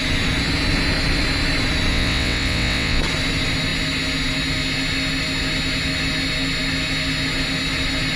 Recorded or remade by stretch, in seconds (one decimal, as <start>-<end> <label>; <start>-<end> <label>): 0.0-1.9 recorded; 1.9-3.0 remade; 3.0-8.2 recorded